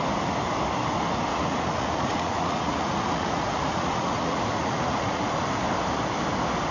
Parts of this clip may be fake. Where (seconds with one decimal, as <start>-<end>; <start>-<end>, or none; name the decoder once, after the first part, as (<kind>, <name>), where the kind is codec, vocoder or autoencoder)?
1.3-5.3 (vocoder, Vocos)